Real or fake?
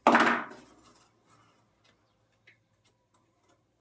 real